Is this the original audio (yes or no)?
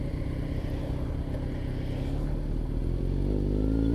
yes